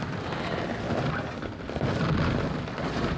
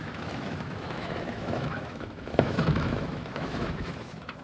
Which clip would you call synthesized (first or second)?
second